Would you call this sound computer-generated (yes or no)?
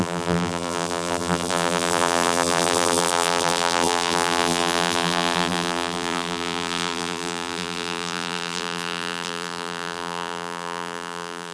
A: yes